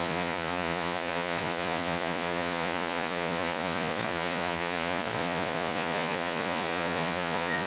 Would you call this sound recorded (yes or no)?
no